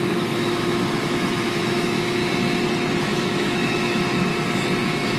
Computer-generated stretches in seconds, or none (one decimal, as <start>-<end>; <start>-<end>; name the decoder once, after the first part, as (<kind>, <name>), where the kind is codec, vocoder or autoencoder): 0.0-2.2 (autoencoder, DAC-VAE); 3.0-4.3; 4.8-5.2